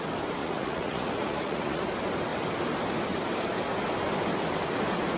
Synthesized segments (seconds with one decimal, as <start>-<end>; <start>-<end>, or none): 0.4-1.8